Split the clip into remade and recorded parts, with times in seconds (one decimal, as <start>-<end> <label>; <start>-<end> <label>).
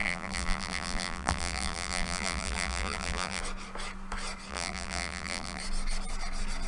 0.0-3.4 remade; 3.4-4.5 recorded; 4.5-5.6 remade; 5.6-6.7 recorded